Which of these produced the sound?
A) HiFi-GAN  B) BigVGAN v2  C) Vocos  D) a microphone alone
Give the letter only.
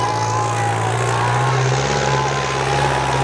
D